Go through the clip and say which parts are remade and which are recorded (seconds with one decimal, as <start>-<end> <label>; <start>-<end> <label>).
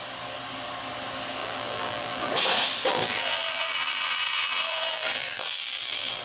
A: 0.0-1.4 recorded; 1.4-2.3 remade; 2.3-2.9 recorded; 2.9-6.2 remade